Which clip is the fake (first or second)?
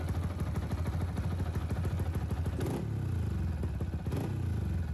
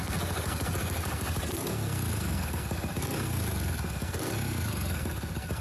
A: second